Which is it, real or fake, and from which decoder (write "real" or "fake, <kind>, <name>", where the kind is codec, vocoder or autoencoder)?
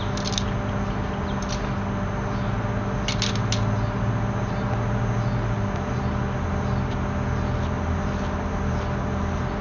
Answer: real